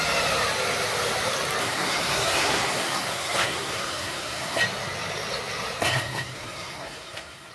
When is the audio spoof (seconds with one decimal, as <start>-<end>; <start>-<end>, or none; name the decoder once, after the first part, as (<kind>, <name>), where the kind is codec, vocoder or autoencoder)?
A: 1.6-4.6 (codec, SNAC); 5.8-7.5